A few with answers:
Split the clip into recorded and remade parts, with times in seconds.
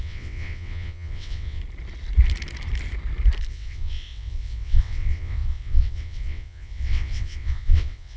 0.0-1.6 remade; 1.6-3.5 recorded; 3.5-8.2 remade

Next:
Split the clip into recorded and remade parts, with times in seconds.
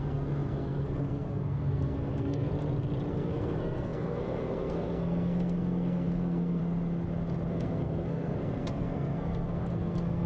0.0-2.5 remade; 2.5-3.1 recorded; 3.1-6.6 remade; 6.6-7.5 recorded; 7.5-10.3 remade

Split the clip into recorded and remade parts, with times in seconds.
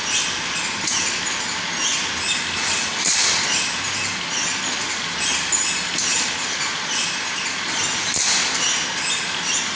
0.0-9.8 recorded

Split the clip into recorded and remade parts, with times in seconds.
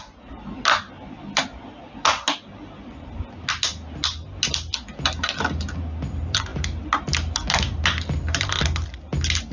0.0-9.5 recorded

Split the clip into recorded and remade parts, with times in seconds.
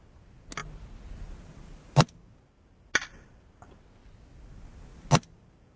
0.0-5.8 recorded